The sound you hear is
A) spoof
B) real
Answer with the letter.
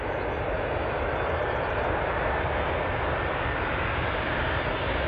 B